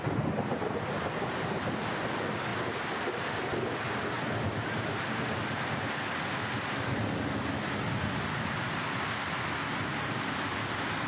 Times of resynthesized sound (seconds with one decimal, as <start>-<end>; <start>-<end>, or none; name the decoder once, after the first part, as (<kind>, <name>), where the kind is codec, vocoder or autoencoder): none